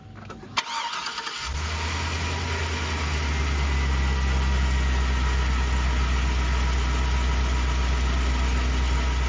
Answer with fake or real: real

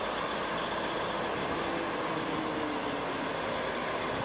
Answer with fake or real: real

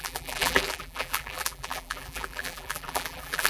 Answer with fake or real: fake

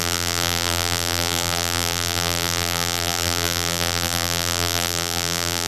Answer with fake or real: fake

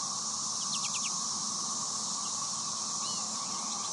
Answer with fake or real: real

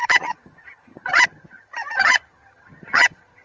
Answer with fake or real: fake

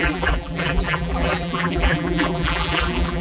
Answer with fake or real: fake